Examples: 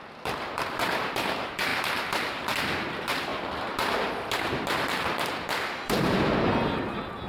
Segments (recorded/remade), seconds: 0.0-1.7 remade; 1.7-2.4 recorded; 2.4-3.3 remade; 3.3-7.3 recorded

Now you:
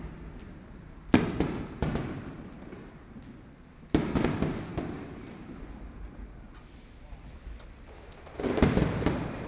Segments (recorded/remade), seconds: 0.0-9.5 recorded

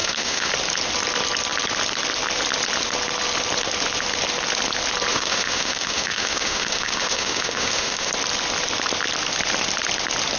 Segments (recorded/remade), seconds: 0.0-0.5 remade; 0.5-5.1 recorded; 5.1-8.1 remade; 8.1-10.4 recorded

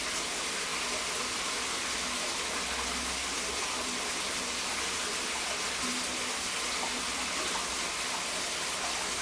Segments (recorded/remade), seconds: 0.0-9.2 recorded